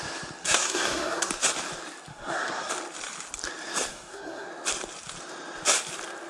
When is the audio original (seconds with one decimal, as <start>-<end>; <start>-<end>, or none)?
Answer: 0.0-0.4; 1.3-2.1; 2.7-3.9; 4.5-6.3